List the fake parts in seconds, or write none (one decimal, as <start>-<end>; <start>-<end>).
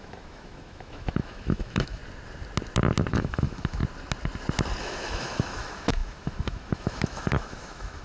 0.0-2.0; 3.1-3.8; 4.8-8.0